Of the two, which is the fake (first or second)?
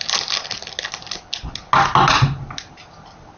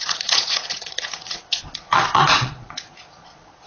second